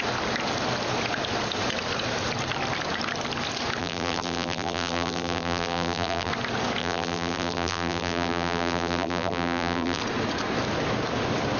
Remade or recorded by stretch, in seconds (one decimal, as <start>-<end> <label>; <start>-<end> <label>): 0.0-3.8 recorded; 3.8-6.3 remade; 6.3-6.8 recorded; 6.8-10.0 remade; 10.0-11.6 recorded